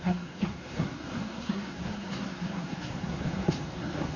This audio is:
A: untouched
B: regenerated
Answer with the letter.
B